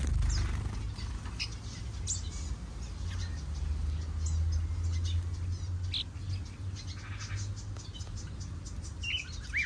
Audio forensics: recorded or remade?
recorded